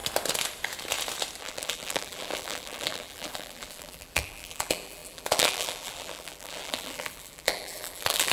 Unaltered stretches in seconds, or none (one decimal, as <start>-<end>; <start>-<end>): 0.0-1.4